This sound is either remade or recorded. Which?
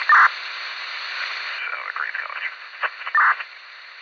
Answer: recorded